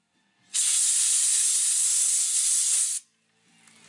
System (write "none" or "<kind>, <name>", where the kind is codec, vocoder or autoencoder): none